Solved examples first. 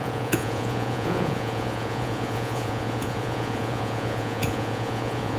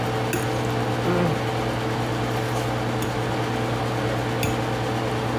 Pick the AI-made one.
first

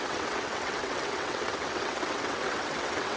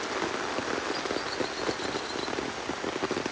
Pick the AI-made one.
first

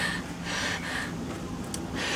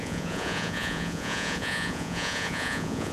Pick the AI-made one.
second